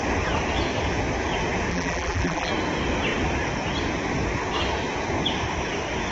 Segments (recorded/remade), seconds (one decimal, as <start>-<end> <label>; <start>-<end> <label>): 0.0-1.7 recorded; 1.7-2.5 remade; 2.5-6.1 recorded